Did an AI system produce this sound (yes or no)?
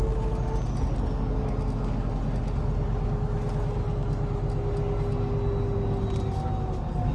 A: no